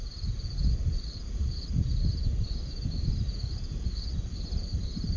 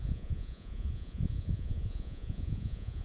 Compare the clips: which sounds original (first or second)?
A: first